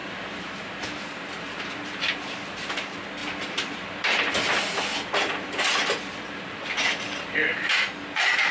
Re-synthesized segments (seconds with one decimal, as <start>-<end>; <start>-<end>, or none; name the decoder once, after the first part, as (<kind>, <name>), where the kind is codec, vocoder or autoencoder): 0.0-2.1 (vocoder, BigVGAN v2); 3.2-4.5